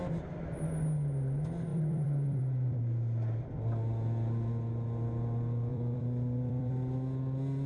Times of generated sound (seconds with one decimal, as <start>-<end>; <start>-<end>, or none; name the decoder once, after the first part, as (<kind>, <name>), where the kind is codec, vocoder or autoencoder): 1.7-2.8 (vocoder, BigVGAN v2); 5.7-6.7